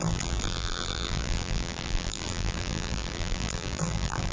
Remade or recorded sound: remade